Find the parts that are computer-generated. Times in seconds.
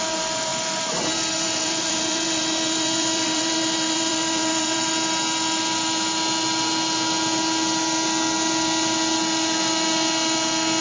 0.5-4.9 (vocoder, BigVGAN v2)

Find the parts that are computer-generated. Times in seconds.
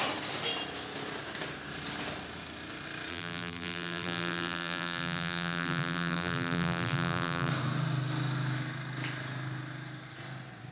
3.1-7.5 (vocoder, BigVGAN v2)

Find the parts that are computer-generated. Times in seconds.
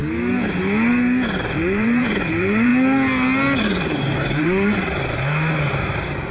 1.4-2.7 (vocoder, BigVGAN v2); 3.6-6.3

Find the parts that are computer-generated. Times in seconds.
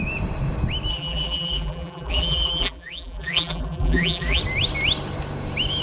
0.9-4.4 (vocoder, BigVGAN v2)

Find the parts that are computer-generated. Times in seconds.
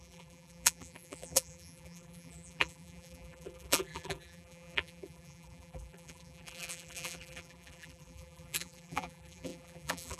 0.0-10.2 (vocoder, BigVGAN v2)